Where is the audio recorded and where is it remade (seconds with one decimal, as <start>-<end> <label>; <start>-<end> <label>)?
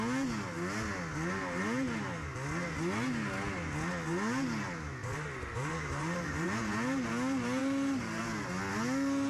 0.0-5.0 recorded; 5.0-6.7 remade; 6.7-7.6 recorded; 7.6-8.2 remade; 8.2-9.3 recorded